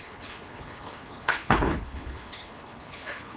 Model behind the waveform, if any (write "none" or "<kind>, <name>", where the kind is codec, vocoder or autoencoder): codec, HILCodec